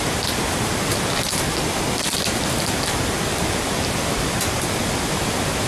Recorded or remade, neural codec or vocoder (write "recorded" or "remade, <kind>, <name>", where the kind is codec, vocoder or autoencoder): recorded